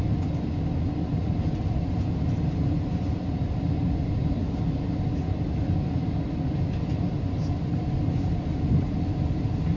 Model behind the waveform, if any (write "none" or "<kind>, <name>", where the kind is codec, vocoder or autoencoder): none